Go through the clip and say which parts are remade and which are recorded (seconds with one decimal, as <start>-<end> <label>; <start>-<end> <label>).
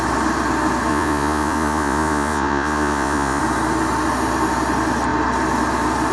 0.0-0.9 recorded; 0.9-3.4 remade; 3.4-6.1 recorded